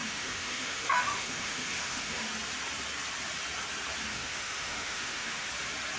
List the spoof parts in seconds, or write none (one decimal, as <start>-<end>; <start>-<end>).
0.0-2.3; 4.1-5.5